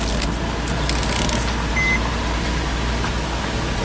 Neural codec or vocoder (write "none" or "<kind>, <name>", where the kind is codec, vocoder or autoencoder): none